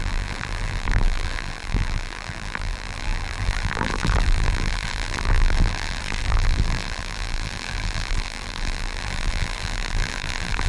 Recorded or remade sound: remade